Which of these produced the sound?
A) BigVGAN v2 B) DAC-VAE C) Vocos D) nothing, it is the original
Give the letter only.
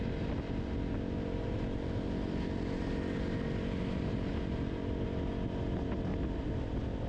D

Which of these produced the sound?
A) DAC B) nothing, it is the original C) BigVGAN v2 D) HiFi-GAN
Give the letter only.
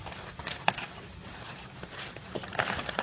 C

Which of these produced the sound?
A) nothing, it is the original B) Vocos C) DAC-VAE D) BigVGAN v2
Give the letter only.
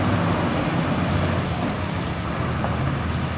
A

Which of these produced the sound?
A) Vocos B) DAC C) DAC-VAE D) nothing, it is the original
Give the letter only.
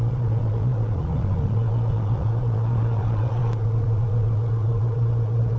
A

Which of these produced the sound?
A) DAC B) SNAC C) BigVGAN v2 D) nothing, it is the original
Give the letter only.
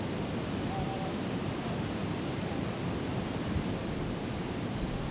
D